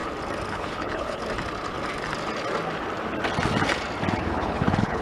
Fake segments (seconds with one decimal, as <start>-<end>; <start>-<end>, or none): 0.5-1.2; 4.2-5.0

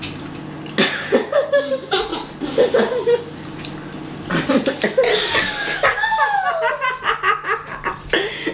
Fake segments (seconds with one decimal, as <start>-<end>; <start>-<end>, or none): none

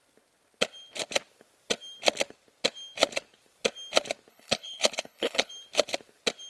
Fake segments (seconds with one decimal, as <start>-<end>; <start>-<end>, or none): 4.3-5.5